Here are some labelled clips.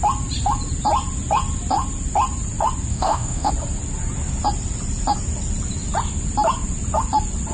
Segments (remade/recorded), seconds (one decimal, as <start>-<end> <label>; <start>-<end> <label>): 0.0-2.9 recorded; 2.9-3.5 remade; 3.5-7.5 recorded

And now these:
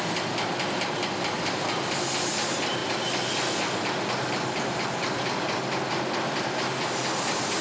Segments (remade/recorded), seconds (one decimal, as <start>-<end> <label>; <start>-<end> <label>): 0.0-7.6 recorded

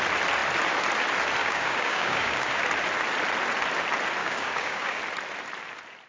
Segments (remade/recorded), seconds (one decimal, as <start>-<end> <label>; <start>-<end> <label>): 0.0-1.4 recorded; 1.4-2.6 remade; 2.6-4.2 recorded; 4.2-5.0 remade; 5.0-6.1 recorded

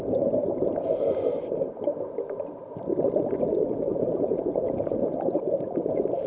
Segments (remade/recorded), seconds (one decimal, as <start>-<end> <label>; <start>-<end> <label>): 0.0-3.9 recorded; 3.9-5.1 remade; 5.1-6.3 recorded